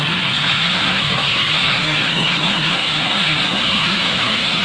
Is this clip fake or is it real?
fake